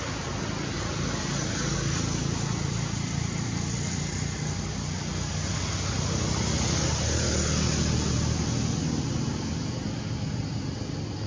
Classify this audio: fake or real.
real